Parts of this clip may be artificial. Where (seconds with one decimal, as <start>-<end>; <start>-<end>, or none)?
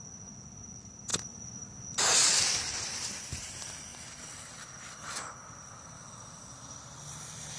none